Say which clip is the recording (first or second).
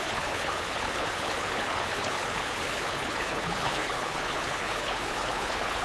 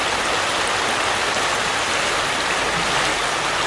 second